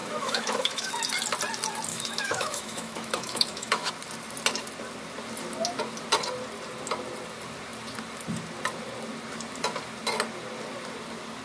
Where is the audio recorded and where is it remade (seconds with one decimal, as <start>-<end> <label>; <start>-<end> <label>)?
0.0-0.9 remade; 0.9-1.9 recorded; 1.9-3.9 remade; 3.9-11.4 recorded

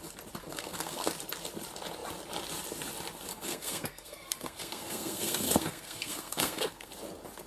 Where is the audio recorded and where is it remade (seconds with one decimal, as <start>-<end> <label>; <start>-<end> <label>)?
0.0-0.4 recorded; 0.4-1.1 remade; 1.1-3.3 recorded; 3.3-6.9 remade; 6.9-7.5 recorded